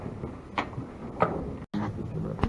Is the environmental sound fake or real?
real